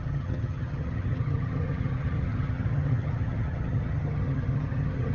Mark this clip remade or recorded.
remade